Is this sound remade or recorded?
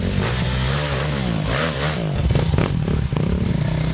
recorded